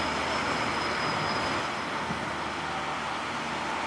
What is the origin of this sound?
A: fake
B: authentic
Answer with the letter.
B